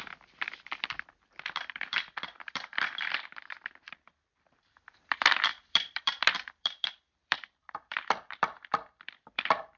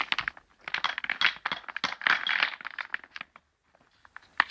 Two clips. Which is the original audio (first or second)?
second